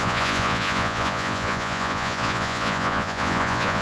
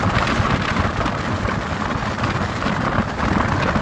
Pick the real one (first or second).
second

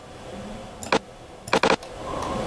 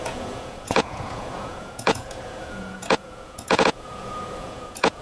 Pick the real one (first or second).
first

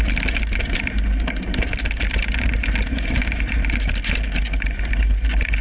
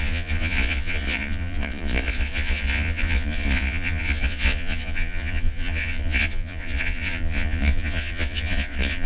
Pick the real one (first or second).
first